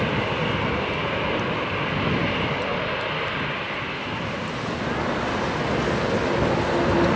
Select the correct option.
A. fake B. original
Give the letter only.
B